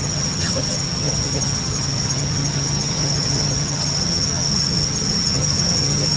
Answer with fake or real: fake